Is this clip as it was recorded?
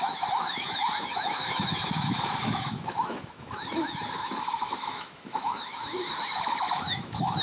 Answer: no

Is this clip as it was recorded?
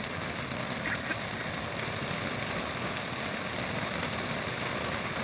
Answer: yes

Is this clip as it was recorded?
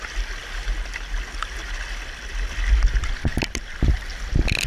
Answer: yes